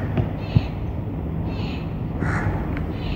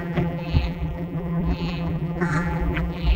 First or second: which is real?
first